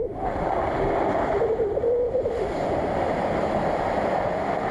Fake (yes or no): no